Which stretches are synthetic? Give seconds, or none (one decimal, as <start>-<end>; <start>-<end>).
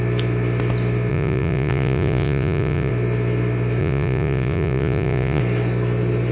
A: 1.1-2.9; 3.8-5.4